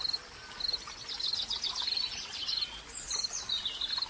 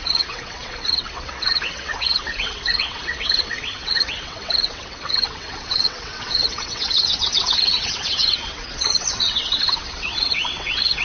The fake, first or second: second